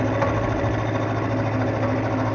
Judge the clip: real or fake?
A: real